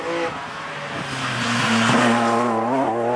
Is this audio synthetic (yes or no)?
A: no